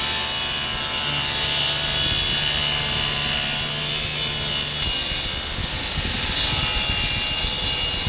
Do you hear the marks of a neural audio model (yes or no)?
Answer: no